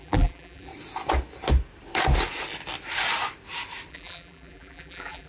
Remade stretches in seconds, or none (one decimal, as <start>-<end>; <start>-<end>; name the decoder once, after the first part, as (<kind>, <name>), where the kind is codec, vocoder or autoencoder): 0.0-0.7 (vocoder, BigVGAN v2); 3.9-5.3